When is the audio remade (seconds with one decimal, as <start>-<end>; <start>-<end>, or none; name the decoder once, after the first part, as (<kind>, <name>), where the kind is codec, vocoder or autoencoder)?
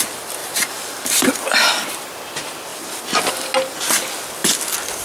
0.4-1.3 (vocoder, BigVGAN v2)